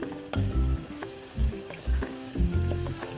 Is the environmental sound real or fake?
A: fake